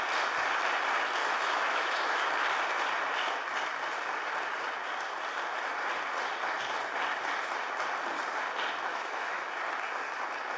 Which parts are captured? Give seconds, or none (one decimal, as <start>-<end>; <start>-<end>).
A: 0.0-1.2; 2.3-8.9; 9.6-10.6